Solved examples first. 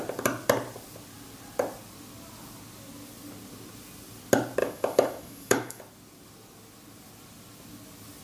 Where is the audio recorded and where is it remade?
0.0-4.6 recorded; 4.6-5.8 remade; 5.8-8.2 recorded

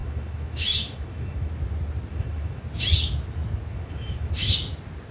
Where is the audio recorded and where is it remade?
0.0-1.5 remade; 1.5-2.1 recorded; 2.1-2.6 remade; 2.6-3.7 recorded; 3.7-4.5 remade; 4.5-5.1 recorded

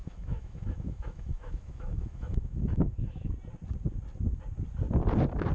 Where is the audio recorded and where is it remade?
0.0-3.3 remade; 3.3-5.5 recorded

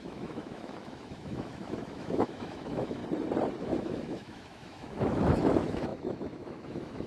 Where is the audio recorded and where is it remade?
0.0-3.0 remade; 3.0-3.6 recorded; 3.6-7.1 remade

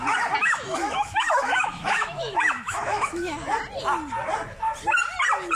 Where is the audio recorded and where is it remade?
0.0-0.4 recorded; 0.4-3.5 remade; 3.5-5.6 recorded

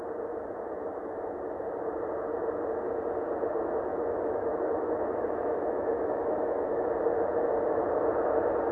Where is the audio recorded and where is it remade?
0.0-3.9 recorded; 3.9-6.9 remade; 6.9-8.7 recorded

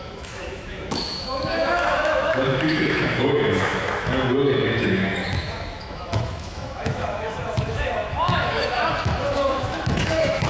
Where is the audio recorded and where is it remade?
0.0-10.5 remade

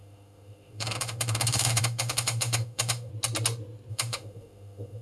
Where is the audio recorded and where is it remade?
0.0-3.1 remade; 3.1-3.9 recorded; 3.9-5.0 remade